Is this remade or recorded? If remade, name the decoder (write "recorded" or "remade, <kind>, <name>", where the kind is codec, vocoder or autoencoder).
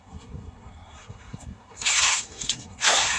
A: remade, codec, SNAC